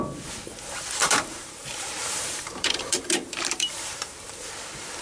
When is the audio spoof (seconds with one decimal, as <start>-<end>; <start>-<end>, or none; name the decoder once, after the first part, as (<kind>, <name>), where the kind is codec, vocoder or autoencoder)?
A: 1.0-4.0 (vocoder, BigVGAN v2)